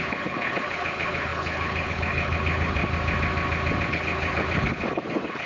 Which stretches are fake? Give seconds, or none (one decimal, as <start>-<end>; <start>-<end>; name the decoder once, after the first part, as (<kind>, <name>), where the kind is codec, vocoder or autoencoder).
0.0-2.8 (codec, HILCodec); 3.9-5.5